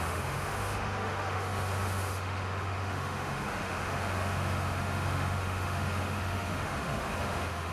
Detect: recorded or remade remade